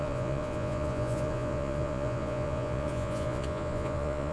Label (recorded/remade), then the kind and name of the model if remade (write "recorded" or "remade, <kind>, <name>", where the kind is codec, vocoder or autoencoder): remade, vocoder, Vocos